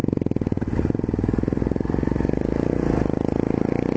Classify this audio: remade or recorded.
recorded